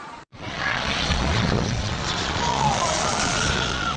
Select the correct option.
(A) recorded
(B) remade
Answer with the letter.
B